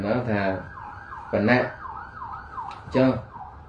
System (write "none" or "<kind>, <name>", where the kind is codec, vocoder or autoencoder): none